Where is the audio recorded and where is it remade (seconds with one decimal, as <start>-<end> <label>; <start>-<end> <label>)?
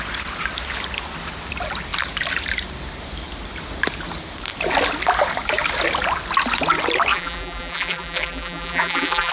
0.0-7.1 recorded; 7.1-9.3 remade